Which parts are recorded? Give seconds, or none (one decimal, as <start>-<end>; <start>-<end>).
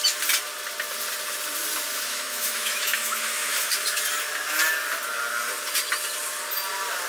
0.0-2.1; 3.7-7.1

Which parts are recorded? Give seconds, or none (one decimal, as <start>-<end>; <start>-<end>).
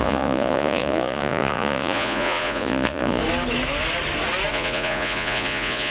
3.2-4.5